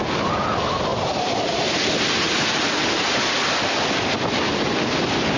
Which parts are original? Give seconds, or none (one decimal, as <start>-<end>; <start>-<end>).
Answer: 0.0-5.4